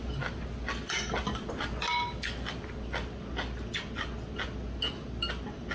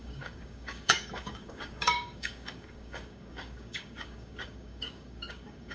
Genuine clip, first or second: first